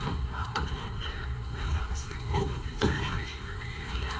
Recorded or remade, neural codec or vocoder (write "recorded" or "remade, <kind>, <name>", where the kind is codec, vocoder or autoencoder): remade, codec, SNAC